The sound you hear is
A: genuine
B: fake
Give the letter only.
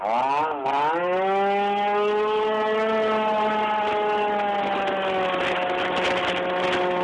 A